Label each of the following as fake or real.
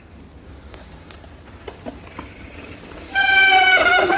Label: real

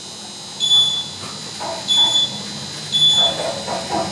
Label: real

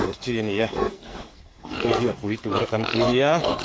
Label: fake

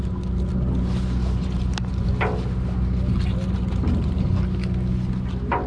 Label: real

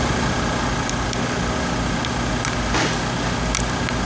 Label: real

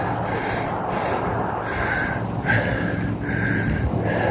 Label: real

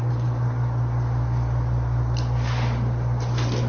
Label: real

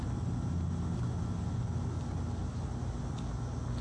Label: real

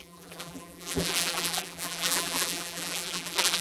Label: fake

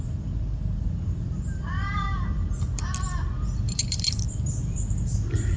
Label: real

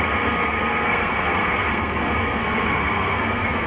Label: fake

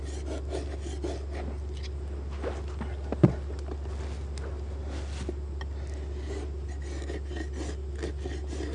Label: real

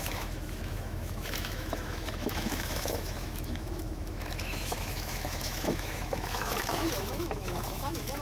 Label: fake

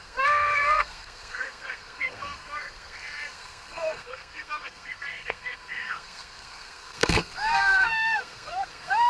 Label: fake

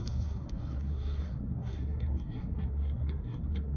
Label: fake